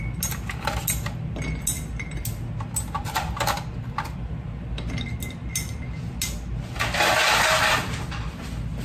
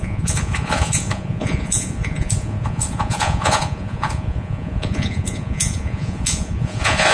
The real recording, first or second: first